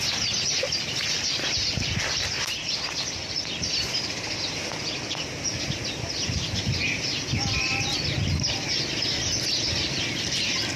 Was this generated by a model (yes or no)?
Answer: no